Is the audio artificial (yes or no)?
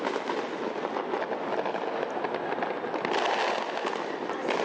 no